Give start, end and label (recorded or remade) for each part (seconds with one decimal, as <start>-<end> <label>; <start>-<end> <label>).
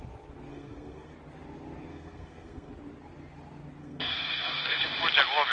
0.0-0.5 recorded; 0.5-1.1 remade; 1.1-1.9 recorded; 1.9-2.7 remade; 2.7-3.8 recorded; 3.8-4.8 remade; 4.8-5.5 recorded